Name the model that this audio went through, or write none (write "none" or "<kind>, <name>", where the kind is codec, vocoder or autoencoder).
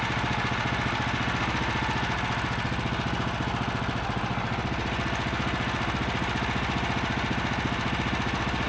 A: none